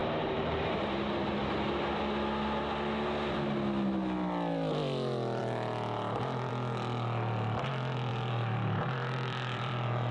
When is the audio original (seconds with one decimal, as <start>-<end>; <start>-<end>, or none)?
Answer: 1.3-8.1